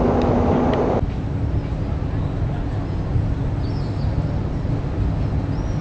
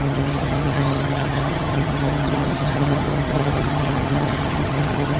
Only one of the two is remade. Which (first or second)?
second